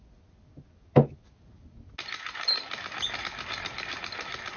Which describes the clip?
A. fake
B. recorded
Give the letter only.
B